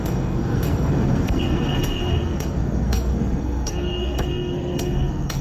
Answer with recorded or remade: remade